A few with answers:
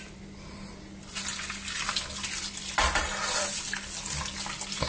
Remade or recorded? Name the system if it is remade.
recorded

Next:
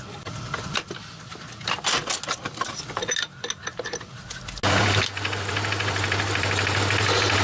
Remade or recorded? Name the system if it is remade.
recorded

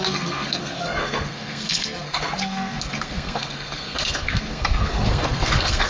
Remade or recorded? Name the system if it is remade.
remade, codec, SNAC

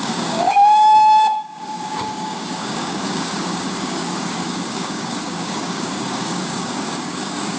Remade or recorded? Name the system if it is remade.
remade, codec, DAC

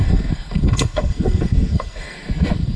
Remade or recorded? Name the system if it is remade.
remade, codec, SNAC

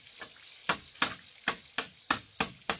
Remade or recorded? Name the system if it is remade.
recorded